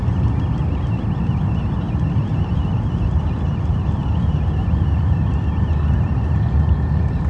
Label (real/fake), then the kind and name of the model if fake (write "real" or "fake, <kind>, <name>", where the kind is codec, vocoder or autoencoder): real